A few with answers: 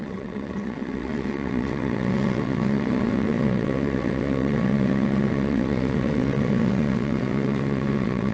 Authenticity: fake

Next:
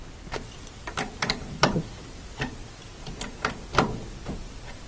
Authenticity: real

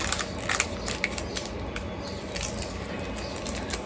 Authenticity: real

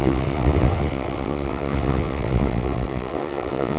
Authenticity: fake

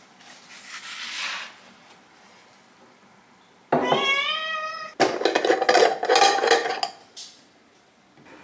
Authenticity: real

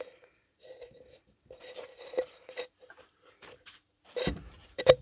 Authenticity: fake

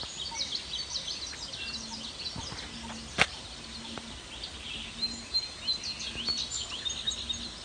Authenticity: real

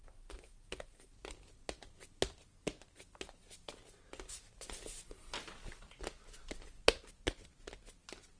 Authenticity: real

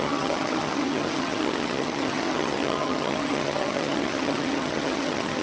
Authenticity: fake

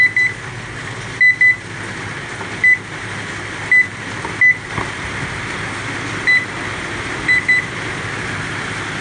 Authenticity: real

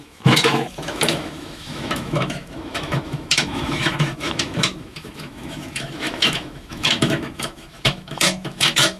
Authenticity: fake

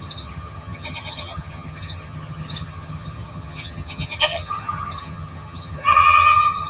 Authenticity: fake